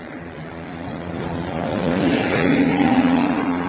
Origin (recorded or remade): remade